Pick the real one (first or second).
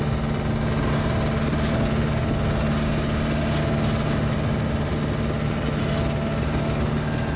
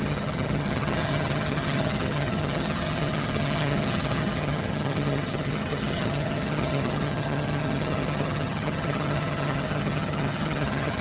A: first